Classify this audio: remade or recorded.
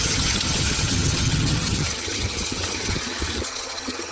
remade